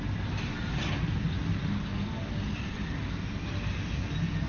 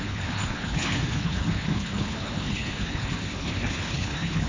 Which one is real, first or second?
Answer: first